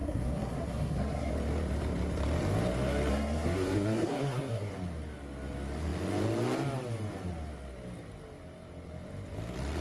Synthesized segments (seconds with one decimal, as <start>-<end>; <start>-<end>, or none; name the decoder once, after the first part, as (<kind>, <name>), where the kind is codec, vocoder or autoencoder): 0.0-1.3 (codec, SNAC); 3.1-4.7